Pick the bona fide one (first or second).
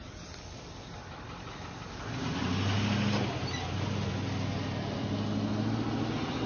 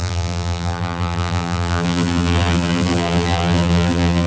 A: first